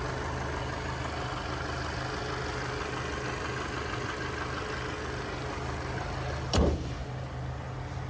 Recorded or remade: recorded